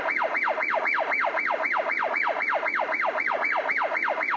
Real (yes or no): no